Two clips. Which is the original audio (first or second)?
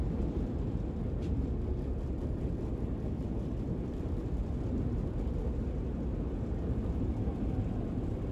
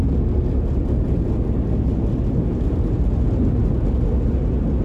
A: second